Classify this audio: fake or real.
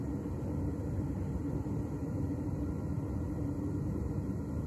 real